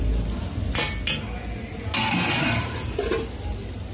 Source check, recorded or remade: recorded